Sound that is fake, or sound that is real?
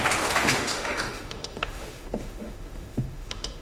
fake